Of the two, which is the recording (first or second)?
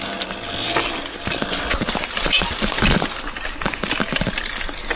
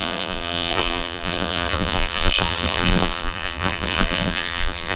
first